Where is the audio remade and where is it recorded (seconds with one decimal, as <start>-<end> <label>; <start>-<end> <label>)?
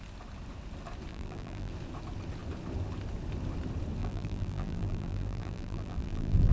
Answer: 0.0-1.1 recorded; 1.1-1.7 remade; 1.7-4.0 recorded; 4.0-6.5 remade